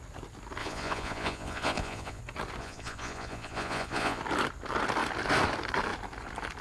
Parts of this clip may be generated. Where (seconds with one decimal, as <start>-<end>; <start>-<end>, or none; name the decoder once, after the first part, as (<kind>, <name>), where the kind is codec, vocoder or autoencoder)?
0.6-2.2 (vocoder, Vocos); 2.6-4.2